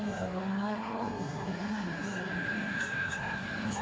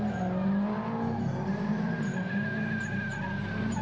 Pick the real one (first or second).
second